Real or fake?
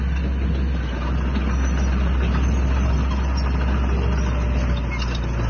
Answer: real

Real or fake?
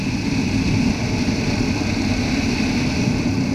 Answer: real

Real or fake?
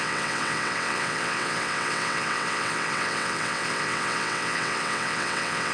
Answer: fake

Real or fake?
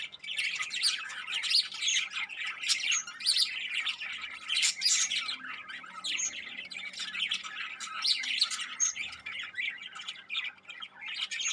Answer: real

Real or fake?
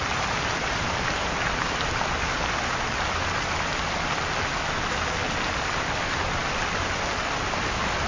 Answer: real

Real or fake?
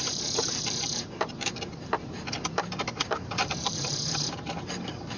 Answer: fake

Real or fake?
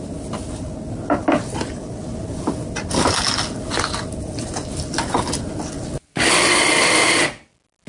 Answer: real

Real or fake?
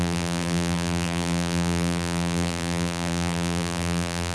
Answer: fake